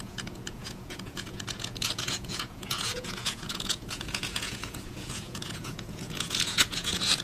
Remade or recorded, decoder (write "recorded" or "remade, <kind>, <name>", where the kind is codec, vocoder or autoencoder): remade, vocoder, Vocos